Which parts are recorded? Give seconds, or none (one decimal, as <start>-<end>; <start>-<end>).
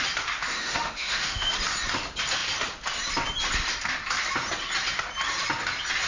0.0-0.5; 1.5-6.1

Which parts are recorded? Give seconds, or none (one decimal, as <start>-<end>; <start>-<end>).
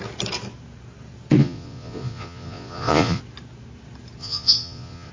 0.0-1.4; 3.2-4.2